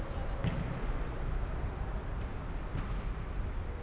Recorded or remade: recorded